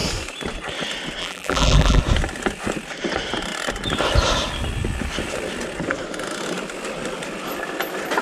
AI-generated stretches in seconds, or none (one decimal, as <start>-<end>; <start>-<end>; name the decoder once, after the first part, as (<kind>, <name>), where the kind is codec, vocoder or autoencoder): 1.2-2.0 (vocoder, BigVGAN v2)